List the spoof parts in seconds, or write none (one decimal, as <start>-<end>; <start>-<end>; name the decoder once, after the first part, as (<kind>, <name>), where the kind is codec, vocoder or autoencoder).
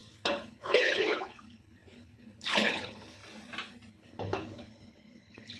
0.0-3.2 (codec, HILCodec); 3.9-5.6